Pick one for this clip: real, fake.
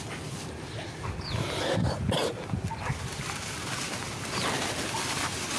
real